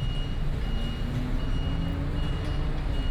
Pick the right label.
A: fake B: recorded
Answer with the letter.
B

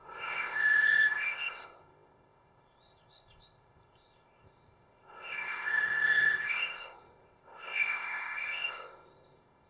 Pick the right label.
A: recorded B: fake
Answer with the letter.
B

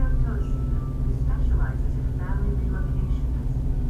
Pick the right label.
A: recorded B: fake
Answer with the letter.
A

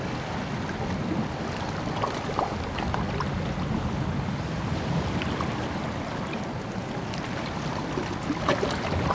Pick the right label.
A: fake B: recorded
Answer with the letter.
B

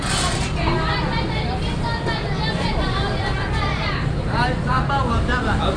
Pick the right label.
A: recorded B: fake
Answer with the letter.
A